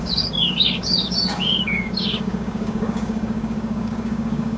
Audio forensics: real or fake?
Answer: fake